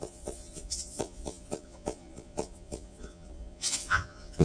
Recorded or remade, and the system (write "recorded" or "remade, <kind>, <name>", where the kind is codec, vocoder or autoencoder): remade, vocoder, Vocos